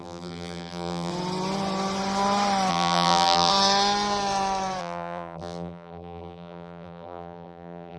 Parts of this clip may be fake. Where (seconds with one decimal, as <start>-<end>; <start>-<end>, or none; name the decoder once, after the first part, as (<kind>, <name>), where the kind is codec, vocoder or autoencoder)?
0.0-1.1 (vocoder, BigVGAN v2); 2.7-3.5; 4.8-8.0